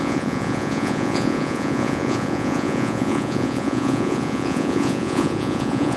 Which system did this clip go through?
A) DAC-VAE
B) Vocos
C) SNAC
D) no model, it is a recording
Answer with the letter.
B